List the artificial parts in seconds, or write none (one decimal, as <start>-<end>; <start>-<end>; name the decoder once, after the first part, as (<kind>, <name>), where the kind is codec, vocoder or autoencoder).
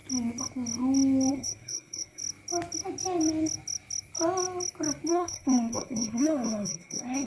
1.3-2.2 (codec, SNAC); 5.1-7.3